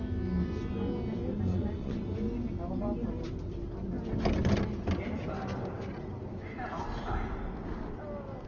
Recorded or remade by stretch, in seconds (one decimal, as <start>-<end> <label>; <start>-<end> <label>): 0.0-1.5 recorded; 1.5-2.0 remade; 2.0-8.5 recorded